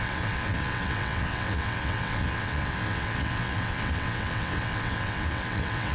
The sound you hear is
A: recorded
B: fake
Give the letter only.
B